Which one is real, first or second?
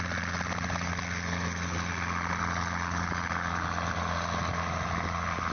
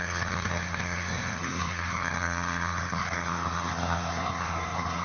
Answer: first